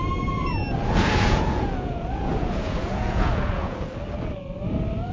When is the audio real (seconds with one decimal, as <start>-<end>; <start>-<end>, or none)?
0.0-0.8; 3.9-5.1

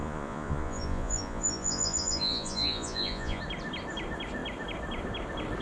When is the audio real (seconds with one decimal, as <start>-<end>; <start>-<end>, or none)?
3.4-5.6

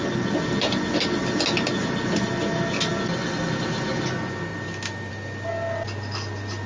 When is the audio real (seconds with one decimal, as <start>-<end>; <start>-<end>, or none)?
0.0-6.7

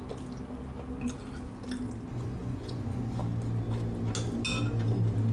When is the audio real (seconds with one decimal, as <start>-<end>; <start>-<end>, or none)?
0.0-2.1; 3.2-5.3